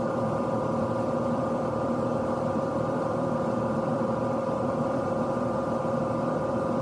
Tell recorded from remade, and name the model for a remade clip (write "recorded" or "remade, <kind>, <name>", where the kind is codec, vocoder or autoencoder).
remade, vocoder, BigVGAN v2